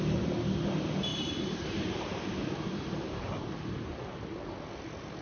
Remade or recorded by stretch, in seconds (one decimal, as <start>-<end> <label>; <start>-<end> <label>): 0.0-1.1 recorded; 1.1-4.2 remade; 4.2-5.2 recorded

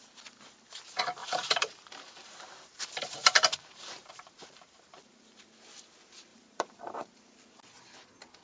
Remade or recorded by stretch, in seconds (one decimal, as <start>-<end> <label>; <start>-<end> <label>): 0.0-1.2 recorded; 1.2-5.4 remade; 5.4-6.3 recorded; 6.3-7.2 remade; 7.2-8.4 recorded